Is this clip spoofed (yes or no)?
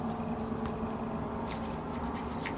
no